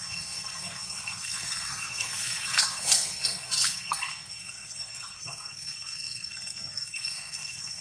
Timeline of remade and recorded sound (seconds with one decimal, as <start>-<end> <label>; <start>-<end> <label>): 0.0-7.8 remade